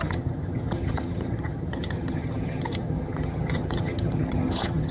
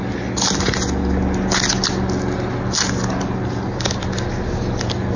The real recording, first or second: second